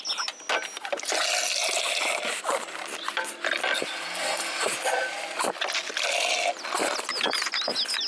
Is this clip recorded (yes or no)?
yes